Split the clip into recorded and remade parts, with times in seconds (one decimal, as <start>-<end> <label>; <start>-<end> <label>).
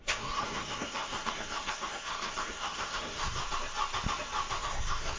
0.0-3.4 remade; 3.4-4.6 recorded; 4.6-5.2 remade